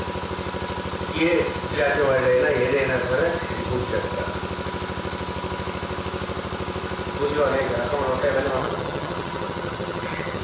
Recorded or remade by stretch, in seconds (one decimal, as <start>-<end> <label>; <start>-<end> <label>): 0.0-8.6 recorded; 8.6-10.4 remade